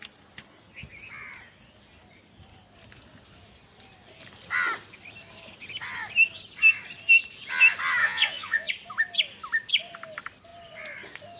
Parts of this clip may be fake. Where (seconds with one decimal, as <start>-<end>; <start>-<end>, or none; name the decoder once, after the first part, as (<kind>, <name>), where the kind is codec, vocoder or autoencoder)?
8.0-8.7 (vocoder, Vocos)